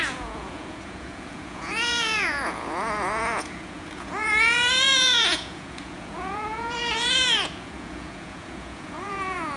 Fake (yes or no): yes